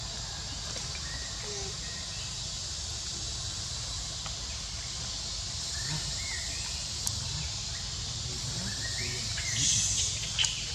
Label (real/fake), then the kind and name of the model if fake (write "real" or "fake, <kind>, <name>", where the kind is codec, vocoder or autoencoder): real